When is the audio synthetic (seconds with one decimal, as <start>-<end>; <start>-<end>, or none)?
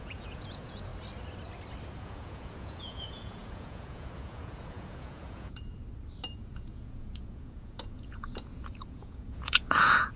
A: 0.0-0.9; 2.0-5.7; 6.4-10.2